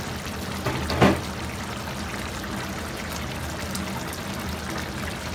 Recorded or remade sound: recorded